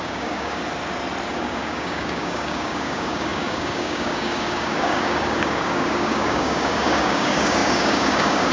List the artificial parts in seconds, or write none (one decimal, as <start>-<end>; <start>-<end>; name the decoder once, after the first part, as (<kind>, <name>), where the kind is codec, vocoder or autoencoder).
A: 0.0-0.6 (codec, DAC); 1.3-8.5